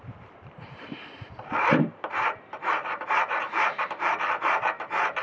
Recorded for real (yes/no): no